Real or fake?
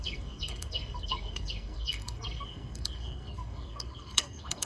fake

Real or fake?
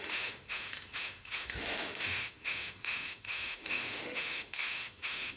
fake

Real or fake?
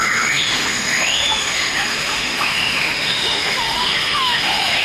fake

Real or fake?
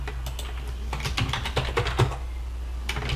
real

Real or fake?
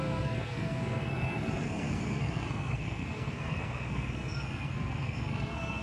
fake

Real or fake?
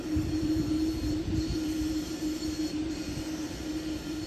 fake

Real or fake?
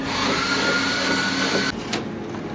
real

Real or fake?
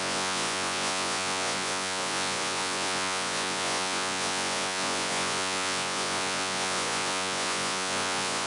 fake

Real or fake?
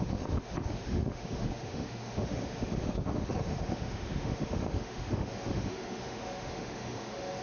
fake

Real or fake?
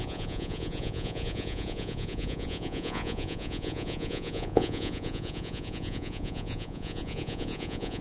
fake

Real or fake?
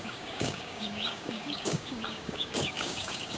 fake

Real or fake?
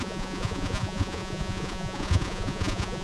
fake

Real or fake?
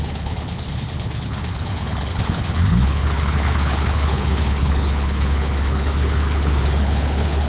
fake